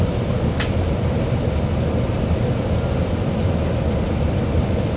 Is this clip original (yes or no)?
yes